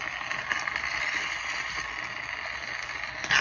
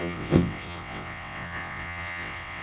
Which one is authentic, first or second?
first